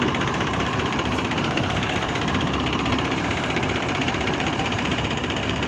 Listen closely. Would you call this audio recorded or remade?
remade